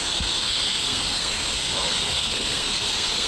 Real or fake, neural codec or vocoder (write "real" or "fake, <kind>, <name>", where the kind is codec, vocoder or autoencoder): fake, codec, SNAC